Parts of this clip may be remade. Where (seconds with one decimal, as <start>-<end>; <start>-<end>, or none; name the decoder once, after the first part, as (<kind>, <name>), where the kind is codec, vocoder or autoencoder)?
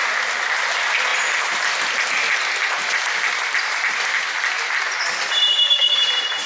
5.5-6.0 (codec, DAC)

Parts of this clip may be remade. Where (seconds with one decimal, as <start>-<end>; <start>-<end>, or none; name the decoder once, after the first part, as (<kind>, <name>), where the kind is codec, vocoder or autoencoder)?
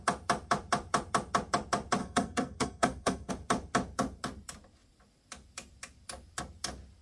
2.0-3.3 (codec, SNAC)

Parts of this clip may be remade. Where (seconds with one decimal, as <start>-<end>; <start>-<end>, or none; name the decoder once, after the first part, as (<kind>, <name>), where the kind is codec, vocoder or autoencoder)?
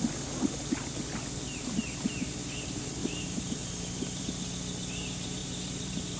3.0-4.2 (vocoder, BigVGAN v2); 5.4-6.2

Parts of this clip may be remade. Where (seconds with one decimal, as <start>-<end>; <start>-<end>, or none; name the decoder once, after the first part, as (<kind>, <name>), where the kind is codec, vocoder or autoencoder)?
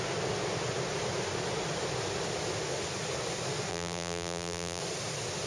3.7-4.8 (vocoder, BigVGAN v2)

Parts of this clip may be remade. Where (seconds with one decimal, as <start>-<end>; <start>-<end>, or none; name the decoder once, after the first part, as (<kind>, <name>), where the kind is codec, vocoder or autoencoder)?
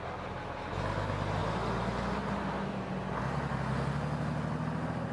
none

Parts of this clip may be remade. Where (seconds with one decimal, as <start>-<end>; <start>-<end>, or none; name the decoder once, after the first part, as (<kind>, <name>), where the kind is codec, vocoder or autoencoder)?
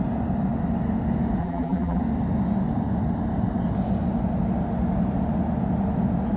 1.4-2.0 (vocoder, BigVGAN v2)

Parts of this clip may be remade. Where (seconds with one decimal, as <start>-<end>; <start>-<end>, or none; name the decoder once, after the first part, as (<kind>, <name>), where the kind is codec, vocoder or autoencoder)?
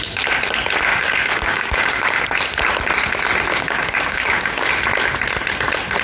0.9-2.2 (codec, DAC); 3.5-4.7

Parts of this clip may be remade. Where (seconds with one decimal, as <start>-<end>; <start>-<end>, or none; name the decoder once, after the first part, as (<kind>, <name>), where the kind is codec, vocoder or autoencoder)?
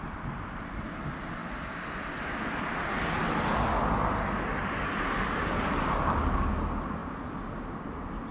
none